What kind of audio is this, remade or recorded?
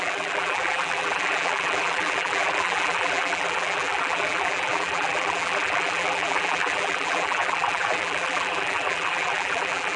remade